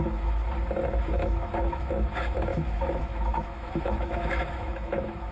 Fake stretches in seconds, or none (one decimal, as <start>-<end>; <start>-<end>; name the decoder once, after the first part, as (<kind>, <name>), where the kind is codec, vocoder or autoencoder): 0.0-0.4 (autoencoder, DAC-VAE); 0.9-5.3

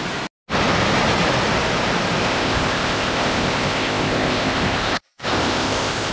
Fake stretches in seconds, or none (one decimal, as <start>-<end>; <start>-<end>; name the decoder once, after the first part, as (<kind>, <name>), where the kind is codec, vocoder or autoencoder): 2.2-6.1 (codec, ZipCodec)

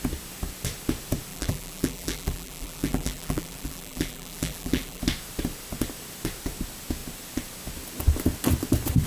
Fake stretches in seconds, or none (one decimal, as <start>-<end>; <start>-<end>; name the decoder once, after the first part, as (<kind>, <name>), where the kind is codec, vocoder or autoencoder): 1.3-5.0 (vocoder, BigVGAN v2)

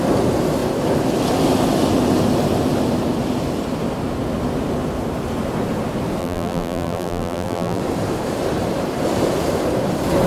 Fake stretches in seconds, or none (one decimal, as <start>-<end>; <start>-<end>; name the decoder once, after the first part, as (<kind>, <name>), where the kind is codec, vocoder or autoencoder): 6.2-7.8 (vocoder, BigVGAN v2)

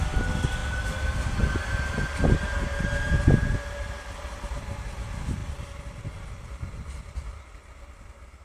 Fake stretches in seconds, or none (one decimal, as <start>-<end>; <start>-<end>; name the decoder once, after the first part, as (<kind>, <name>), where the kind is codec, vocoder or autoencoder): none

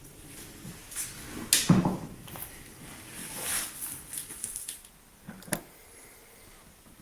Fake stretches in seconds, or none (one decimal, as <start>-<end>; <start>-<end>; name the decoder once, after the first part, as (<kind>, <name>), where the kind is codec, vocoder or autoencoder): none

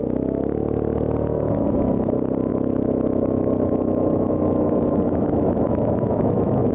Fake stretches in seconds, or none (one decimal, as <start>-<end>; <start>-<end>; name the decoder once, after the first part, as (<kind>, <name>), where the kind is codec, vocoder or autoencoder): 2.5-6.7 (autoencoder, DAC-VAE)